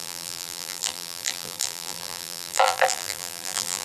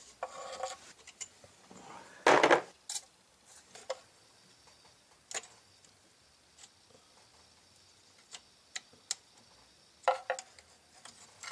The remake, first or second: first